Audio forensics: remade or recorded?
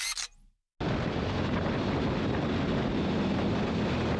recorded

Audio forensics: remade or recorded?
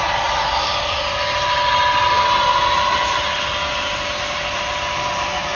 recorded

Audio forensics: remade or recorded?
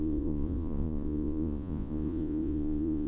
remade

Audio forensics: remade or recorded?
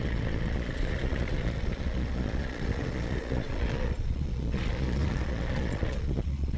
remade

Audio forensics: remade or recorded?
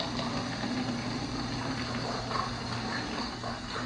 recorded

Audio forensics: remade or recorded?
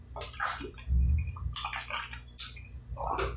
recorded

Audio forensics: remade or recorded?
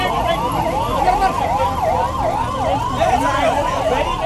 recorded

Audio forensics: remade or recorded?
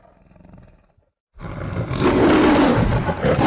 recorded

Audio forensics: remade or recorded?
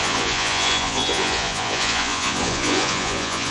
remade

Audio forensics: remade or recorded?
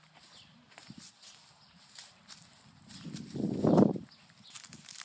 recorded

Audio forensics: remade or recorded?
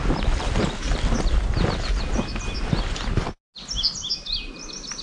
recorded